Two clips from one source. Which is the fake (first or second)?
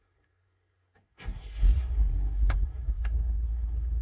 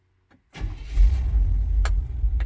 first